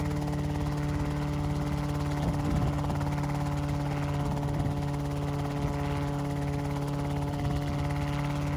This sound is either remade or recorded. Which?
recorded